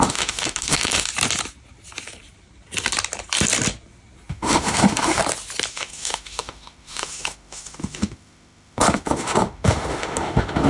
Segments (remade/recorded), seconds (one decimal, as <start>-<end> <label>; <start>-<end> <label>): 0.0-1.1 remade; 1.1-4.3 recorded; 4.3-5.2 remade; 5.2-5.7 recorded; 5.7-10.7 remade